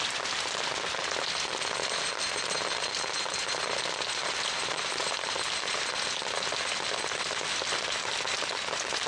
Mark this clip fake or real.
real